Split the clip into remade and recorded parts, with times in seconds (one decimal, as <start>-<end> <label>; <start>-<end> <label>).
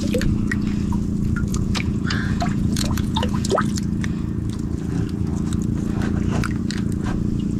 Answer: 0.0-1.5 recorded; 1.5-3.6 remade; 3.6-7.6 recorded